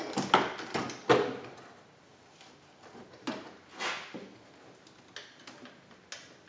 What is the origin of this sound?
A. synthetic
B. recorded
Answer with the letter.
B